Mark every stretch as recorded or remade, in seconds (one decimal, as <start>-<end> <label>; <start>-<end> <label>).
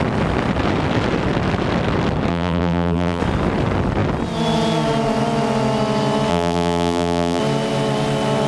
0.0-2.3 recorded; 2.3-3.2 remade; 3.2-6.3 recorded; 6.3-7.4 remade; 7.4-8.5 recorded